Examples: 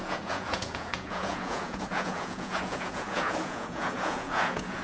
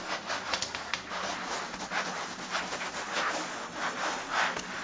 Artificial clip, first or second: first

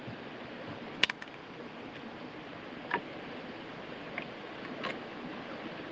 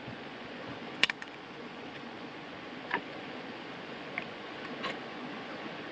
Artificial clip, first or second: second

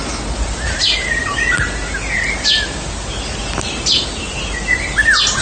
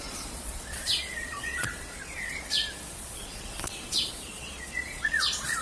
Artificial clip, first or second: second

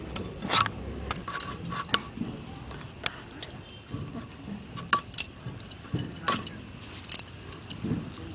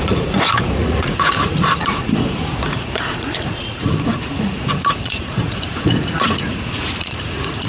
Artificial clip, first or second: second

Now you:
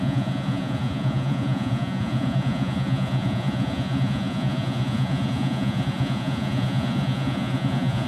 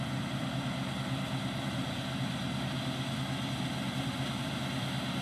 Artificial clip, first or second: first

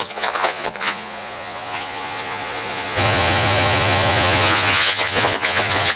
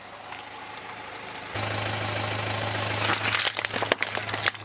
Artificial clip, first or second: first